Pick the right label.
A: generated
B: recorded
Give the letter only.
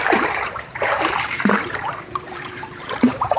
A